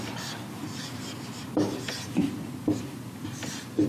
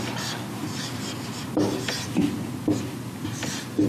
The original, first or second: second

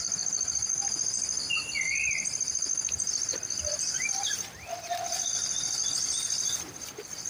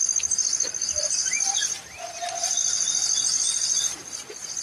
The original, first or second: second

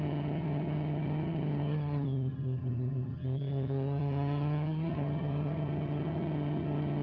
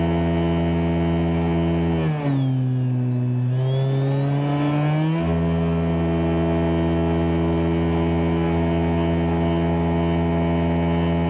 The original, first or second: second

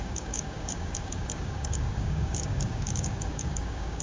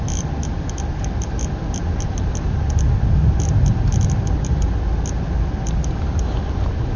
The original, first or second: second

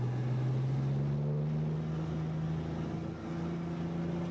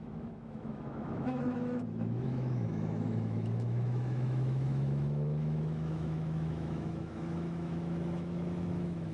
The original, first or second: first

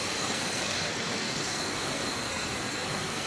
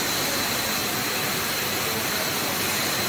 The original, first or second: second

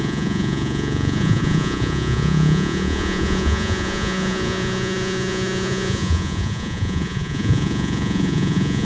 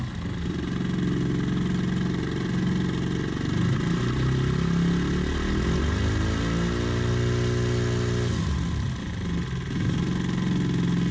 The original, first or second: second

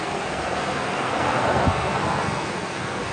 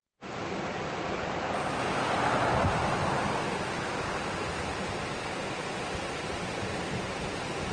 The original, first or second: second